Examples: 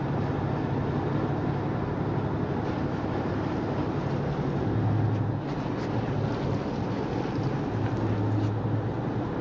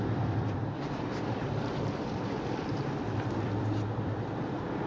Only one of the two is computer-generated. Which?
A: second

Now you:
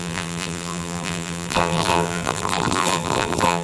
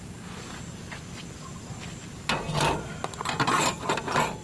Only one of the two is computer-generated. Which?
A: first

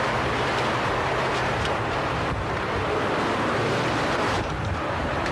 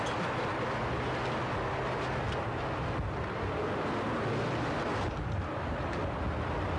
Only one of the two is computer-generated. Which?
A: first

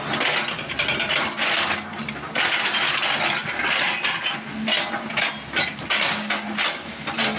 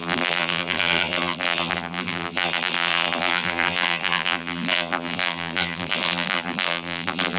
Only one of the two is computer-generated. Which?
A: second